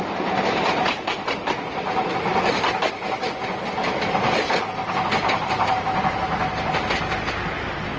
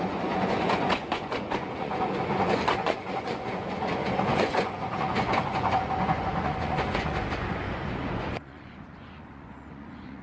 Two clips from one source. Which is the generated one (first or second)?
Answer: second